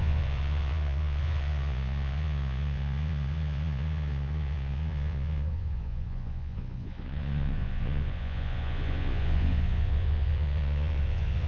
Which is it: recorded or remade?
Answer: remade